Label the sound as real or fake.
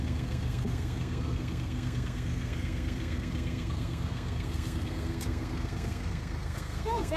fake